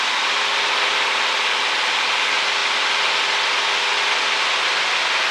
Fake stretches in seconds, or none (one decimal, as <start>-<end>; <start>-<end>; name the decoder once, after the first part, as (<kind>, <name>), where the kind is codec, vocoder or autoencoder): none